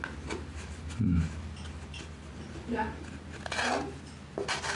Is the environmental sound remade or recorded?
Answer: recorded